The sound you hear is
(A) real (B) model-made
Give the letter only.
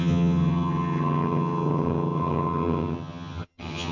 B